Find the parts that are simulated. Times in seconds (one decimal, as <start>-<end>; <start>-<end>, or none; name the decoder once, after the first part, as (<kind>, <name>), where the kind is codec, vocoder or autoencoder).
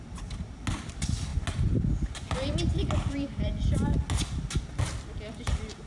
none